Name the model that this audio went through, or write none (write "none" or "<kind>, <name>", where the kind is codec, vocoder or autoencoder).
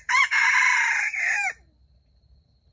vocoder, BigVGAN v2